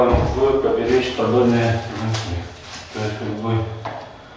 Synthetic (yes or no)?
no